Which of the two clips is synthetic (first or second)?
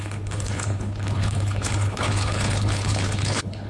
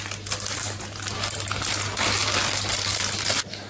first